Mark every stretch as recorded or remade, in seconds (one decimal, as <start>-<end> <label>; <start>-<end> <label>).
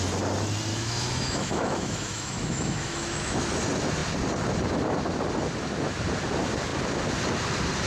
0.0-0.7 recorded; 0.7-3.5 remade; 3.5-7.9 recorded